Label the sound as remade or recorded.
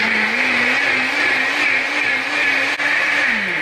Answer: recorded